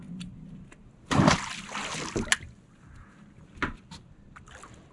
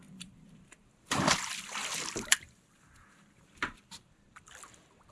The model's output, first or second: second